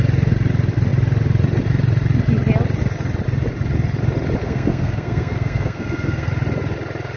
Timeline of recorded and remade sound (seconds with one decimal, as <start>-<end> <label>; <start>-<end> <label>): 0.0-4.4 recorded; 4.4-6.3 remade; 6.3-7.2 recorded